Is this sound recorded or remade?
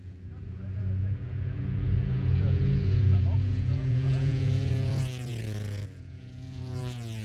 remade